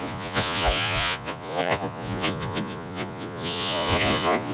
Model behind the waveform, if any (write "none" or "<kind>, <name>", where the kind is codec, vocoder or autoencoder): vocoder, Vocos